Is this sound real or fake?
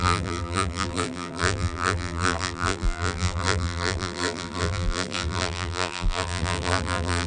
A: fake